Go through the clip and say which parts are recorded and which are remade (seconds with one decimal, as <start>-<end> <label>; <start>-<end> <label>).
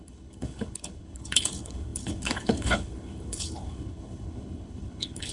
0.0-5.3 remade